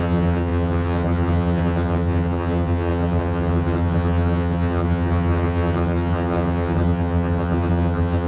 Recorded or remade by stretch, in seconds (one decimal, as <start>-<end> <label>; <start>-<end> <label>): 0.0-8.3 remade